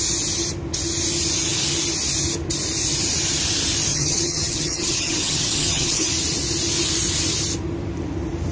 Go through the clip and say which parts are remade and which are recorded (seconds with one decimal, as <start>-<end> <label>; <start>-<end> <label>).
0.0-3.9 recorded; 3.9-6.1 remade; 6.1-8.5 recorded